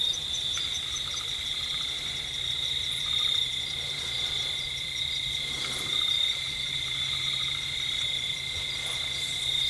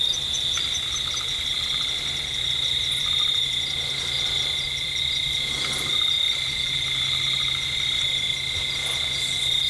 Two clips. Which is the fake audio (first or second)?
first